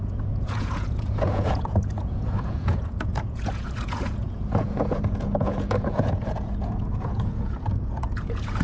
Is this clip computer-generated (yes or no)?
yes